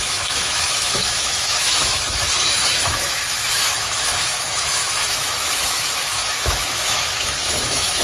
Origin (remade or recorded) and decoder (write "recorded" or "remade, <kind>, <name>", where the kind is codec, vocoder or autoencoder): remade, autoencoder, DAC-VAE